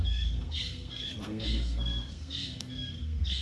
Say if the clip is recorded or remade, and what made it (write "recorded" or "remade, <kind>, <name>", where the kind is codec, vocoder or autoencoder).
remade, codec, SNAC